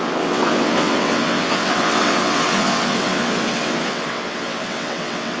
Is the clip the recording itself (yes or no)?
no